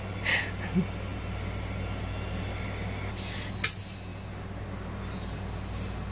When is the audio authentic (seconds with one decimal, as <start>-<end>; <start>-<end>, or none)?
0.0-6.1